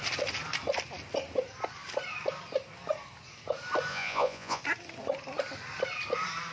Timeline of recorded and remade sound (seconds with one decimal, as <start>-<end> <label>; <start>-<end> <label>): 0.0-3.9 recorded; 3.9-4.6 remade; 4.6-6.5 recorded